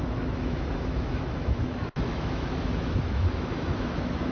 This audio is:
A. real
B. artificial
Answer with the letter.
B